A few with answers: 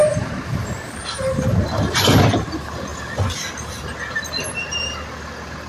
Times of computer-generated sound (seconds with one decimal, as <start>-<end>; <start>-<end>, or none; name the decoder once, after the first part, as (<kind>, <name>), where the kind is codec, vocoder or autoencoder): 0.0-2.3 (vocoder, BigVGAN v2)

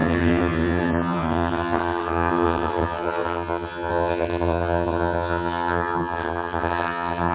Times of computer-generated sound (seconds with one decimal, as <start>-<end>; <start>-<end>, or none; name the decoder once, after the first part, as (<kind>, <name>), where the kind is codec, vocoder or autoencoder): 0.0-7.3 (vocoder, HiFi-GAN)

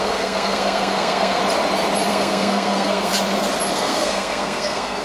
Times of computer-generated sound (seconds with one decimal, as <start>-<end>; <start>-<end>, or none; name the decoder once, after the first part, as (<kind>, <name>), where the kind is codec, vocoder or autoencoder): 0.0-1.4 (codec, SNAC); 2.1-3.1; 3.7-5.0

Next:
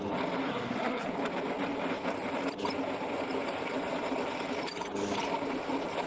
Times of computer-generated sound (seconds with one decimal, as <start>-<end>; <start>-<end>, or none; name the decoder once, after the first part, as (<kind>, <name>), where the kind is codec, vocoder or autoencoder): 0.5-1.1 (codec, SNAC)

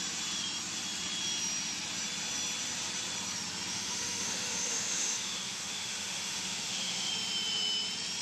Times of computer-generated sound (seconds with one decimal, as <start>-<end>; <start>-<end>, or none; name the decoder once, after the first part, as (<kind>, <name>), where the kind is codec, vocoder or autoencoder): 3.7-7.1 (autoencoder, DAC-VAE)